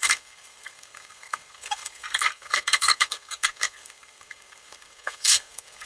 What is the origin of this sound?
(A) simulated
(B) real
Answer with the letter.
A